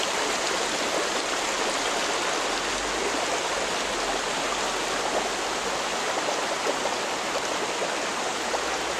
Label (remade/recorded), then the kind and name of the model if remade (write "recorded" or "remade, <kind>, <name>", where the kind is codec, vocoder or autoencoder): recorded